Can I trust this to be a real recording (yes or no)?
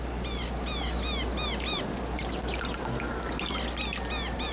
yes